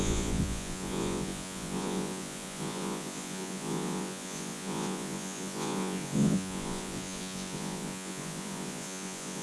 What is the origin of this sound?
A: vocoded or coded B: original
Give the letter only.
A